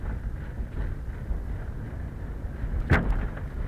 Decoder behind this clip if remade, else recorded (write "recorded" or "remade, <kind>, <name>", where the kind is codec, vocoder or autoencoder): recorded